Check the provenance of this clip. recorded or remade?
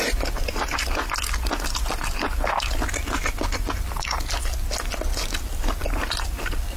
recorded